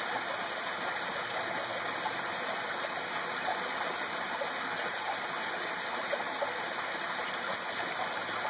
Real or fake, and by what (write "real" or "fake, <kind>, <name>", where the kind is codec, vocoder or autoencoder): real